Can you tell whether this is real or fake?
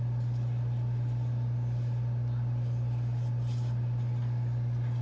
real